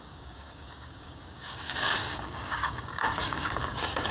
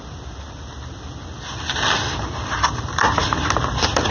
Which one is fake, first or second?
first